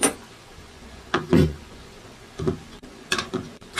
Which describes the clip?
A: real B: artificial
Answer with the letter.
B